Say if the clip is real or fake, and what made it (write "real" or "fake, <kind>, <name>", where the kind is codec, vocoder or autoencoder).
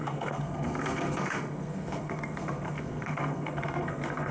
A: fake, codec, SNAC